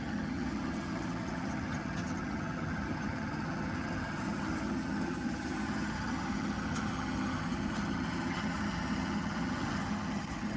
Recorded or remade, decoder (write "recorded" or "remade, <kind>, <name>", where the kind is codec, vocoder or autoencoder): remade, vocoder, HiFi-GAN